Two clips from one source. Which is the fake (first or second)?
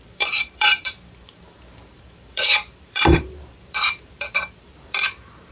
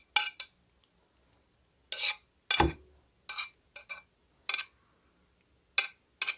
first